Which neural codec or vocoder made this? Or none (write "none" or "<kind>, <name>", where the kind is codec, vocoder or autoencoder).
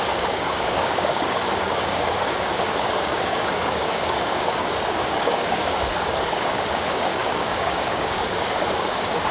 codec, DAC